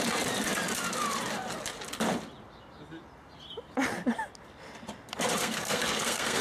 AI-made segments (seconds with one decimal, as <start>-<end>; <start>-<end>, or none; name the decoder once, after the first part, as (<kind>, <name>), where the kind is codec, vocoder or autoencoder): 5.4-6.4 (codec, SNAC)